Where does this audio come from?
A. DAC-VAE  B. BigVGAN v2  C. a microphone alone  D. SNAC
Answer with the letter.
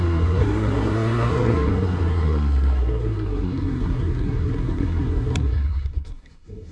D